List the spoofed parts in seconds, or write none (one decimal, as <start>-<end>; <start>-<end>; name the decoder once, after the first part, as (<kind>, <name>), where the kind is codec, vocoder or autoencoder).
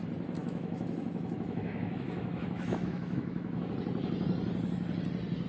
0.4-3.7 (autoencoder, DAC-VAE)